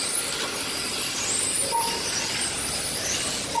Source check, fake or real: real